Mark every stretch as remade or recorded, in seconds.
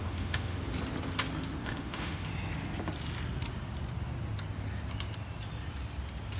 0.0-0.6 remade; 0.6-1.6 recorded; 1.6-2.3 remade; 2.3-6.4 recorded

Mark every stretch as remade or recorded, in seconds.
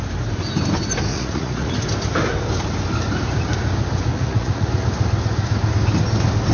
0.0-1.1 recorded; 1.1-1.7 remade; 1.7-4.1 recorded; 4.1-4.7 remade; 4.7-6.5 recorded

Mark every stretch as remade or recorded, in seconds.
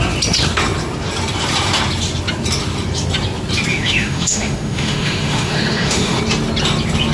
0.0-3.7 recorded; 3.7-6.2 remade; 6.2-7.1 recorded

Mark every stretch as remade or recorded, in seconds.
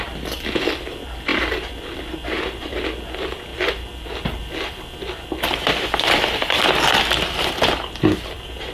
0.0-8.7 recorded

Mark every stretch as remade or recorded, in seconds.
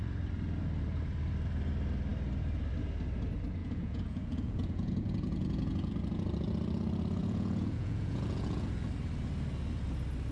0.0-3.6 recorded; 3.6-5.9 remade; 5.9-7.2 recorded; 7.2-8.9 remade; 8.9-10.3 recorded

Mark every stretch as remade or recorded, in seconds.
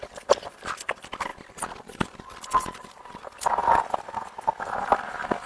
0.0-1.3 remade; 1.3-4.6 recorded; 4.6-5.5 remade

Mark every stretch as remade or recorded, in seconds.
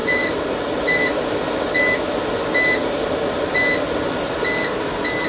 0.0-1.2 remade; 1.2-2.8 recorded; 2.8-3.5 remade; 3.5-5.3 recorded